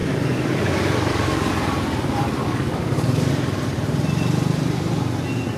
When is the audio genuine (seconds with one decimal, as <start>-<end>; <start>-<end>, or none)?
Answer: 1.5-2.4; 3.3-5.6